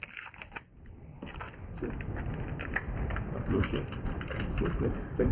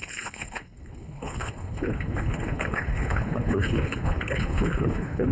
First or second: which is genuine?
first